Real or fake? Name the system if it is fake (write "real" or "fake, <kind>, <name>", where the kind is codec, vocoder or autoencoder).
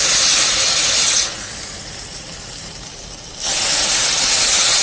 real